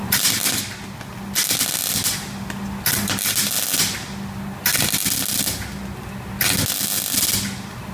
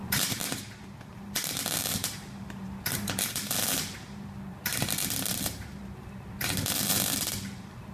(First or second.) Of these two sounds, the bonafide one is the first